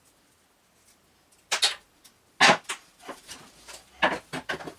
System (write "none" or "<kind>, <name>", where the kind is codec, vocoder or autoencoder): none